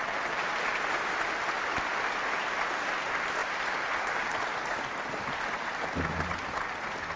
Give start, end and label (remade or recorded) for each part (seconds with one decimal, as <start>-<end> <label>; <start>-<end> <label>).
0.0-7.2 recorded